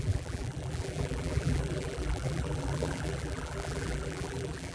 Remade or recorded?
remade